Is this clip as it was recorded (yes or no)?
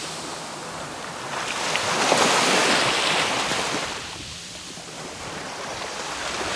no